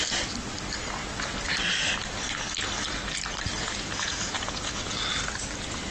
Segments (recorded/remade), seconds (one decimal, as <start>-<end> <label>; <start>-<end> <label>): 0.0-3.6 recorded; 3.6-5.0 remade; 5.0-5.9 recorded